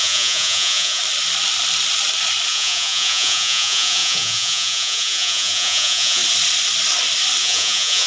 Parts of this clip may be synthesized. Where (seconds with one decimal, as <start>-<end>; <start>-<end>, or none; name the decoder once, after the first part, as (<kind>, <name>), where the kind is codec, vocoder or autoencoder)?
0.0-1.0 (vocoder, Vocos); 2.5-6.2; 7.4-8.1